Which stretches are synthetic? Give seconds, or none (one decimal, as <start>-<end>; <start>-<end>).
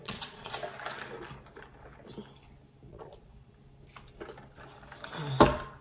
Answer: 0.0-0.5; 2.9-3.5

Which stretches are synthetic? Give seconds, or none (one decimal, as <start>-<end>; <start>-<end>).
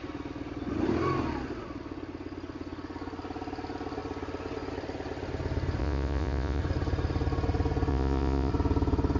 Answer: 5.8-6.6; 7.9-8.5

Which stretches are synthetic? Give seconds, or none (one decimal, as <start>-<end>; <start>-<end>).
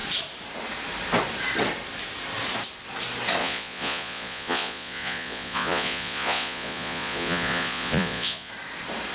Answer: 3.4-8.5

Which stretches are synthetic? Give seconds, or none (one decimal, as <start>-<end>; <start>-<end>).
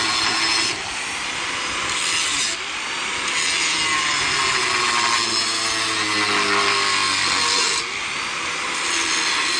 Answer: none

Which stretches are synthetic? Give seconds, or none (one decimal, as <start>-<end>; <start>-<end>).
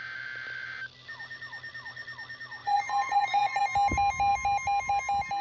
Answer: 2.6-3.6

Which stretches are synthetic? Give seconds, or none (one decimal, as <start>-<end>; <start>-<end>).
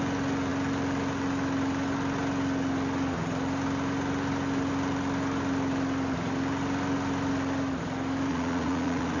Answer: 8.3-9.2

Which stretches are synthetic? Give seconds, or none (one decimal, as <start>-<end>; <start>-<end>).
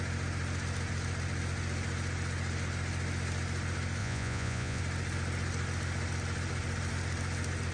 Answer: 4.0-4.8